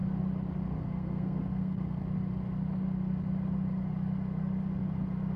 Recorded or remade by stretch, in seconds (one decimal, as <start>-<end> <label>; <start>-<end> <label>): 0.0-0.8 recorded; 0.8-2.0 remade; 2.0-5.4 recorded

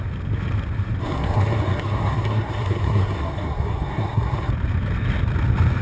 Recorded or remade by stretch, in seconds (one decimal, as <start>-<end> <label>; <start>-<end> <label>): 0.0-1.0 recorded; 1.0-4.5 remade; 4.5-5.8 recorded

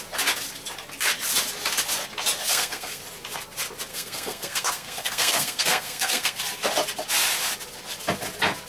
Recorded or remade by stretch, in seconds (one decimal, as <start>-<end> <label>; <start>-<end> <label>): 0.0-2.4 recorded; 2.4-3.0 remade; 3.0-3.9 recorded; 3.9-6.4 remade; 6.4-8.7 recorded

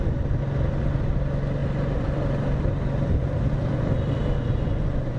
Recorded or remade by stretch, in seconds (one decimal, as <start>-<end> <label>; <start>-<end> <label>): 0.0-5.2 recorded

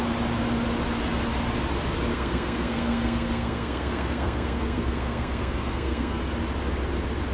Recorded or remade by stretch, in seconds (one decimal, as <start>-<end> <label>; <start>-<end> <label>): 0.0-2.1 recorded; 2.1-6.2 remade; 6.2-7.3 recorded